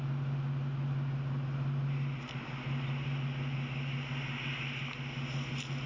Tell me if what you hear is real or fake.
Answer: real